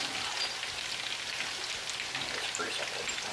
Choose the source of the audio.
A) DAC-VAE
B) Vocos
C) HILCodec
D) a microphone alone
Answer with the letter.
D